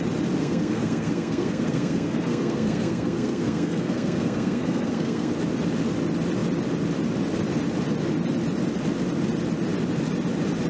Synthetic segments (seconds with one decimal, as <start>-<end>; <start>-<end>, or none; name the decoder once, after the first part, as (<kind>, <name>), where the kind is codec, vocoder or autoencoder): 0.4-5.3 (codec, SNAC)